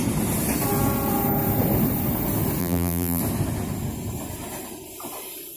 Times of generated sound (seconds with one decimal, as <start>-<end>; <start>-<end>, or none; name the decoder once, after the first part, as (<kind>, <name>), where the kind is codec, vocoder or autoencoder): 2.6-3.2 (vocoder, BigVGAN v2)